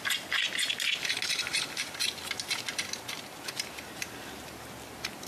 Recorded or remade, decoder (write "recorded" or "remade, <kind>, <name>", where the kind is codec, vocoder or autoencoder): recorded